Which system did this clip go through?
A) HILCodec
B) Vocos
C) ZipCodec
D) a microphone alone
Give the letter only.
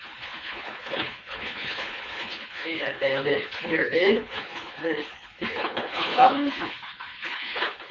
A